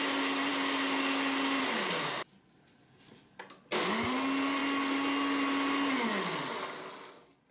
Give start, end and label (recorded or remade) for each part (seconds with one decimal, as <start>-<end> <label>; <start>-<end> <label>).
0.0-7.5 recorded